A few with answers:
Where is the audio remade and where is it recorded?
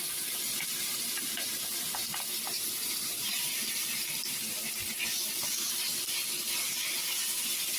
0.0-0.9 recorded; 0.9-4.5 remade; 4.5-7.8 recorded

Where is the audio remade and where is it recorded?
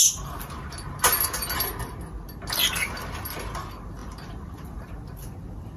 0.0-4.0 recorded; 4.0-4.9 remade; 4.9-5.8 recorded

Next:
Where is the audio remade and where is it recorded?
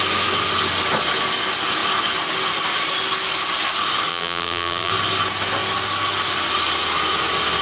0.0-4.1 recorded; 4.1-4.9 remade; 4.9-7.6 recorded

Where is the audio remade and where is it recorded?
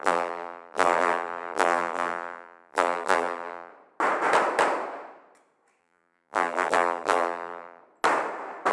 0.0-3.7 remade; 3.7-5.8 recorded; 5.8-7.8 remade; 7.8-8.7 recorded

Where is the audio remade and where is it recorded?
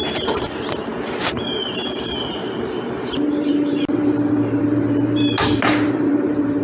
0.0-6.6 remade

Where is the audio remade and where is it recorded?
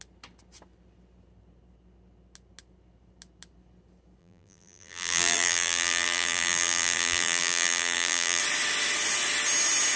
0.0-4.2 recorded; 4.2-8.4 remade; 8.4-10.0 recorded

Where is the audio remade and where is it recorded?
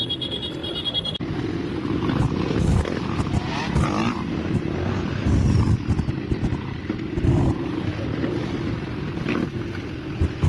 0.0-10.5 recorded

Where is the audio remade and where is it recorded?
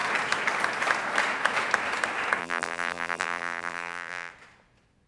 0.0-2.4 recorded; 2.4-4.3 remade; 4.3-5.1 recorded